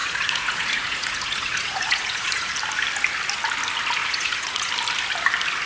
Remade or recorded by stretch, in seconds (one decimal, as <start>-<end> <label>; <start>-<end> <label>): 0.0-2.5 remade; 2.5-4.0 recorded; 4.0-4.7 remade; 4.7-5.7 recorded